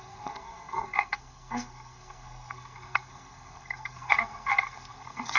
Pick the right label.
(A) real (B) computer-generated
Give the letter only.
B